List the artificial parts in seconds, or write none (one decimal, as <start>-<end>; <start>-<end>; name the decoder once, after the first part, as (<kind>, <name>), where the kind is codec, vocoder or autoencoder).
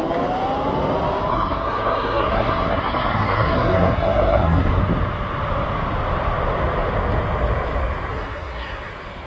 1.3-4.8 (codec, SNAC); 8.1-8.9